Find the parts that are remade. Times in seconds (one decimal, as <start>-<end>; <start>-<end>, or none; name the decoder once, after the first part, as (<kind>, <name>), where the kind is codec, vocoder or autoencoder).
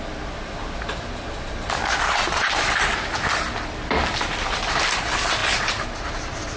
none